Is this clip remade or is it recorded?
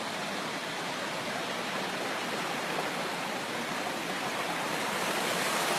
remade